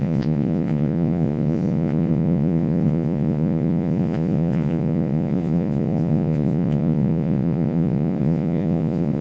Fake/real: fake